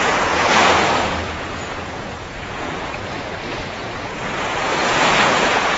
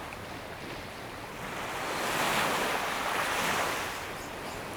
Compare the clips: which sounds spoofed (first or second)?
first